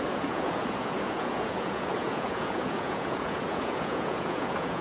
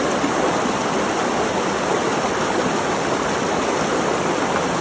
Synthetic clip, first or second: first